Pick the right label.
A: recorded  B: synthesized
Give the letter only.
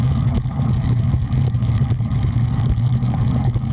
B